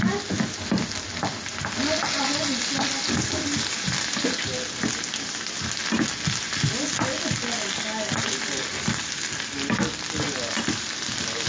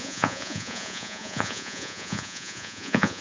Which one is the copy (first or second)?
second